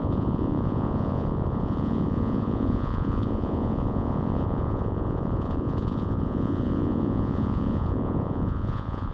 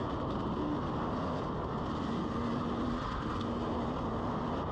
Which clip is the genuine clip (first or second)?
second